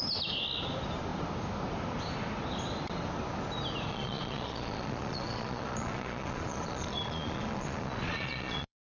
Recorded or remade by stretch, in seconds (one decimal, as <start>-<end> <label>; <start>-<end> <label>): 0.0-3.9 recorded; 3.9-8.9 remade